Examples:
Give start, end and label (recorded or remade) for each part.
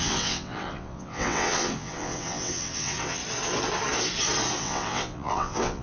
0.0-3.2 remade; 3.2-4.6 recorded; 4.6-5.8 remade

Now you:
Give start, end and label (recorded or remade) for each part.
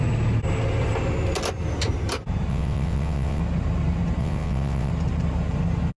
0.0-2.5 recorded; 2.5-3.4 remade; 3.4-4.2 recorded; 4.2-4.9 remade; 4.9-6.0 recorded